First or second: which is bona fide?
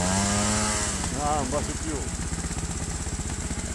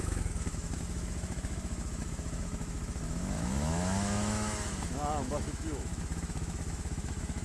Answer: first